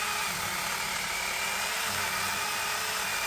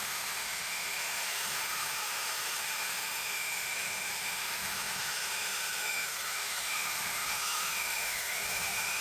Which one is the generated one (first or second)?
second